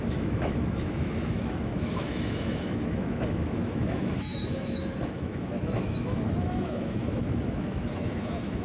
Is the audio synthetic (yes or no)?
yes